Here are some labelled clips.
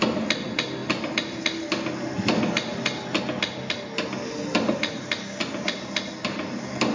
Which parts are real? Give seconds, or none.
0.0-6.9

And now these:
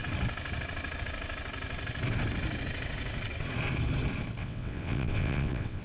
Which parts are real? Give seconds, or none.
0.0-4.4

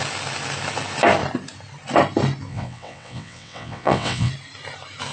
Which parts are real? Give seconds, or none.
0.0-2.5; 4.3-5.1